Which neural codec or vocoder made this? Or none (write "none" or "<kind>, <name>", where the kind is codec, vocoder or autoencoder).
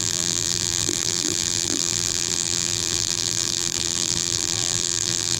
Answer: vocoder, BigVGAN v2